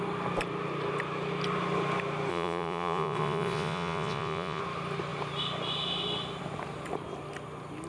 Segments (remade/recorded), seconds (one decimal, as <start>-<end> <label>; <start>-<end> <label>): 0.0-2.3 recorded; 2.3-4.6 remade; 4.6-7.9 recorded